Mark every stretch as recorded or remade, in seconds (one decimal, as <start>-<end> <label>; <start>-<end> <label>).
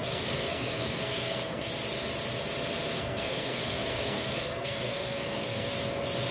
0.0-1.7 remade; 1.7-2.9 recorded; 2.9-5.7 remade; 5.7-6.3 recorded